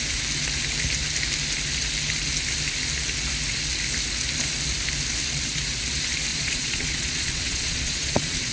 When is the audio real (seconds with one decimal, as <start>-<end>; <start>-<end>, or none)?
0.0-6.3